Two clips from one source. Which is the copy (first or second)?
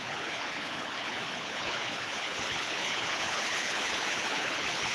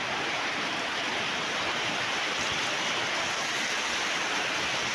first